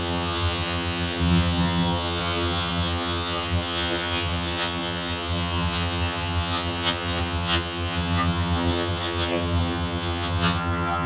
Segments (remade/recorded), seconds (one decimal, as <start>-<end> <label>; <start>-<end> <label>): 0.0-11.1 remade